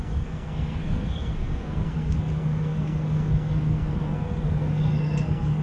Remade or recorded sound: remade